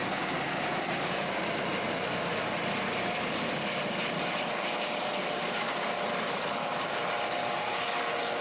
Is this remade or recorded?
recorded